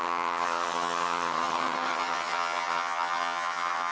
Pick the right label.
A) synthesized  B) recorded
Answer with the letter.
A